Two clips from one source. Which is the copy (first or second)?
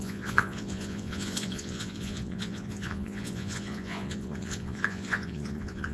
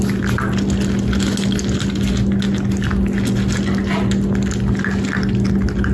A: first